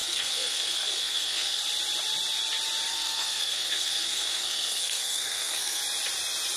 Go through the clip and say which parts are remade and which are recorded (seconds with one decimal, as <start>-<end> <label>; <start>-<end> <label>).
0.0-1.6 remade; 1.6-2.9 recorded; 2.9-5.8 remade; 5.8-6.6 recorded